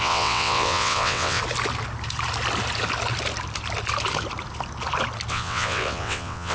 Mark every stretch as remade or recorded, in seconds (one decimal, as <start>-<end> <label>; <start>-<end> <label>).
0.0-1.4 remade; 1.4-5.3 recorded; 5.3-6.5 remade